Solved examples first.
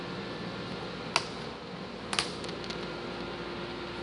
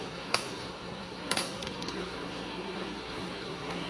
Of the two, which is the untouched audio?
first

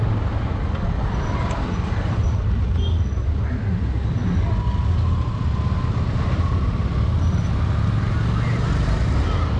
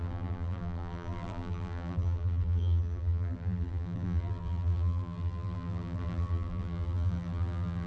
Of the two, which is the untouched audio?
first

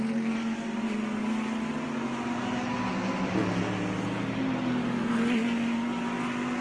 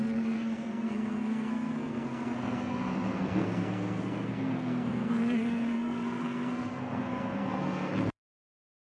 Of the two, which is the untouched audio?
first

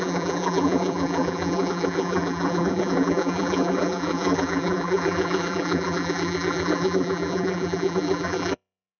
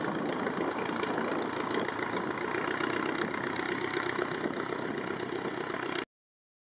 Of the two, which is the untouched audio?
second